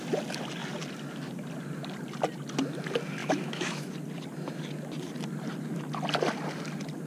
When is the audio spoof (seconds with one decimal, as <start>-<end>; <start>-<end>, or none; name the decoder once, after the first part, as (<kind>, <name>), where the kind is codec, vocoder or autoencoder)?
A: 3.2-3.9 (autoencoder, DAC-VAE)